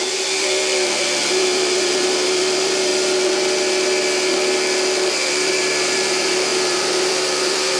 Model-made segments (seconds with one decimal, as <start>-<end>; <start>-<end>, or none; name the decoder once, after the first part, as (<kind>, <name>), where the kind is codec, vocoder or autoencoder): 0.0-2.9 (vocoder, BigVGAN v2); 5.1-7.8